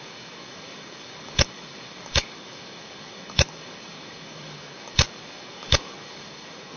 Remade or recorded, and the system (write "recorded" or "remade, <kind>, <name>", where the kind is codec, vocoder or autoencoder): remade, codec, DAC